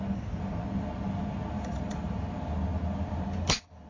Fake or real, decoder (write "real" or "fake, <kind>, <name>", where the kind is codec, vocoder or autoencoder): real